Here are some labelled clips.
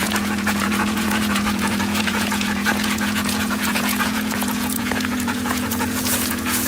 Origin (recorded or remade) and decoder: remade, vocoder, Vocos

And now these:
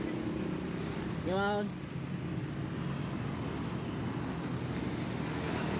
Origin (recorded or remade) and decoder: recorded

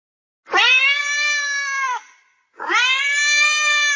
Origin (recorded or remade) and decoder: recorded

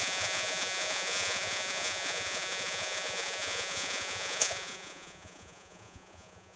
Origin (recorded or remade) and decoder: remade, vocoder, Vocos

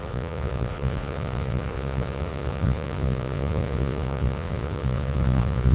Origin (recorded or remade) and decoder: remade, vocoder, Vocos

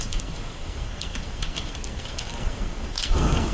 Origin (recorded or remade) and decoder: remade, codec, SNAC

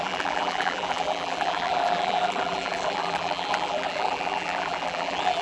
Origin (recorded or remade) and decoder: remade, vocoder, BigVGAN v2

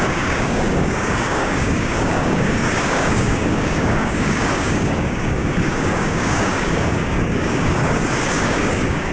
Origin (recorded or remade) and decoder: remade, codec, DAC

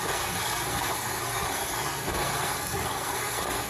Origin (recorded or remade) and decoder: remade, codec, SNAC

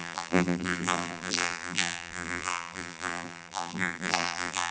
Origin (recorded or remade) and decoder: remade, vocoder, BigVGAN v2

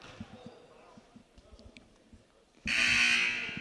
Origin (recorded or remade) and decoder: recorded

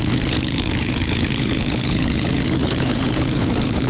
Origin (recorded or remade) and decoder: remade, codec, HILCodec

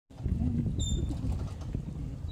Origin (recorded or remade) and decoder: recorded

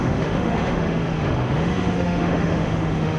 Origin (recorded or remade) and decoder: remade, autoencoder, DAC-VAE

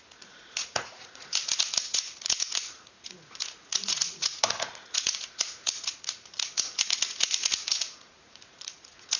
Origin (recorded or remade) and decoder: remade, vocoder, Vocos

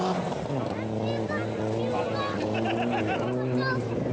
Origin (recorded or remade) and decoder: recorded